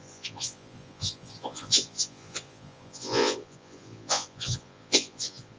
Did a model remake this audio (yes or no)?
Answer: yes